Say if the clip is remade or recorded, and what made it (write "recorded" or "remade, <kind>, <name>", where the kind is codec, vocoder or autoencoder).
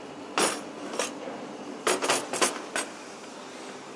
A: recorded